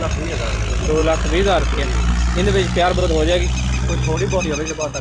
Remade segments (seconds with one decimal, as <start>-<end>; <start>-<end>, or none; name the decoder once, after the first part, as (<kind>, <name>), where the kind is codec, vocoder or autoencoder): none